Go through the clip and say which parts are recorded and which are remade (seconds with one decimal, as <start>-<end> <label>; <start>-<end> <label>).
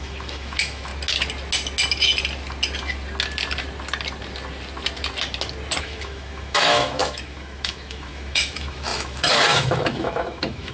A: 0.0-0.9 remade; 0.9-5.8 recorded; 5.8-10.7 remade